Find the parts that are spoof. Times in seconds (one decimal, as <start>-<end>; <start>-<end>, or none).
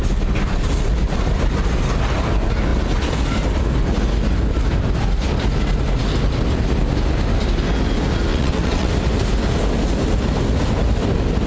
8.3-8.9